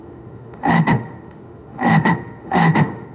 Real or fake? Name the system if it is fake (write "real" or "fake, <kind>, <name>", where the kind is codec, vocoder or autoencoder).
fake, autoencoder, DAC-VAE